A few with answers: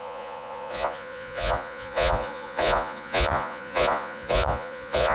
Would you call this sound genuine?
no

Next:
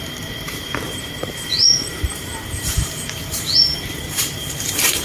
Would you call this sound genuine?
no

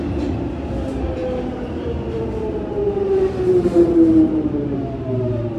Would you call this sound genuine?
yes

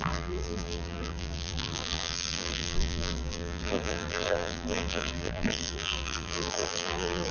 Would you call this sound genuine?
no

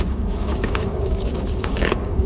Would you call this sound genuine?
no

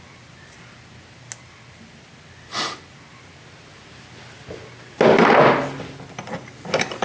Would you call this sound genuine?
yes